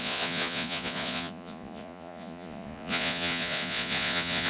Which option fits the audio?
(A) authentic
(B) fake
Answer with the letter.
B